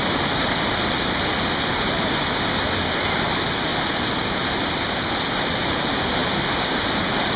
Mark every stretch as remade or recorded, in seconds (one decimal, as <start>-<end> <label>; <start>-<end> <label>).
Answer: 0.0-3.7 recorded; 3.7-5.2 remade; 5.2-6.2 recorded; 6.2-7.4 remade